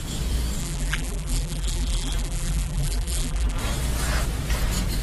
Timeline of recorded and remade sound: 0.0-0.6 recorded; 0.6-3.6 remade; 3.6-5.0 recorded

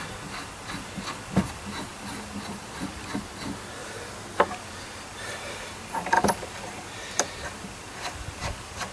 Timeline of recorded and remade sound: 0.0-3.8 recorded; 3.8-8.9 remade

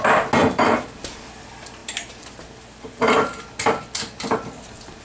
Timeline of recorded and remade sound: 0.0-5.0 recorded